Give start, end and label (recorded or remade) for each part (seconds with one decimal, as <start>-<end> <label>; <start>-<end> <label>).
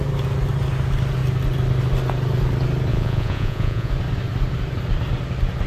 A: 0.0-2.9 recorded; 2.9-3.9 remade; 3.9-5.7 recorded